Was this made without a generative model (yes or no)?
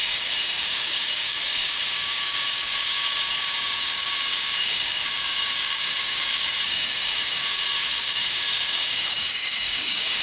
no